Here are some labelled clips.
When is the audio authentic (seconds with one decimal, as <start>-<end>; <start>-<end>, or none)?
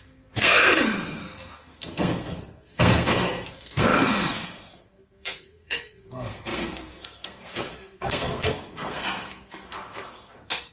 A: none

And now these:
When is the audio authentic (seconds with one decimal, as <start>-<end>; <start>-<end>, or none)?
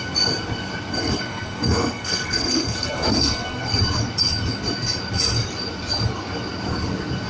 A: 0.0-0.9; 3.7-7.3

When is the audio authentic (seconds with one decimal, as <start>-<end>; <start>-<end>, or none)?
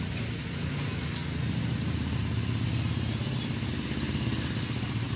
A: 0.0-5.2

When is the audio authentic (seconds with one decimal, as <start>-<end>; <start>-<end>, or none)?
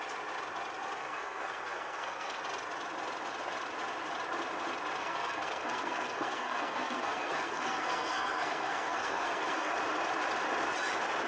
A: 0.0-1.0; 2.4-5.0; 9.7-11.3